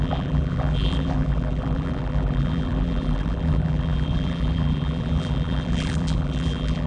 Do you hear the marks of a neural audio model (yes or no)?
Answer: yes